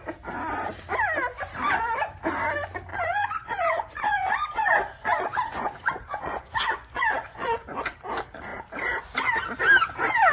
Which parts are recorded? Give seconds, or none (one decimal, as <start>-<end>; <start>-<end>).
0.0-2.9; 7.8-10.3

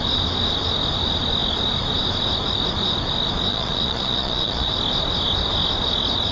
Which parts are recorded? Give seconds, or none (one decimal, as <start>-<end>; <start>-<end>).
0.0-3.5; 4.7-6.3

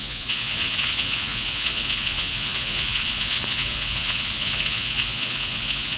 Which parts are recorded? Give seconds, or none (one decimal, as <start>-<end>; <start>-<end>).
none

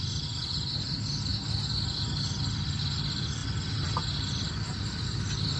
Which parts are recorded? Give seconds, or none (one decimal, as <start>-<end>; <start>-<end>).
0.0-5.6

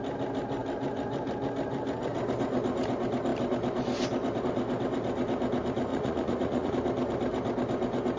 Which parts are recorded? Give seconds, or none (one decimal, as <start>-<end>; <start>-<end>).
0.0-5.9; 6.7-8.2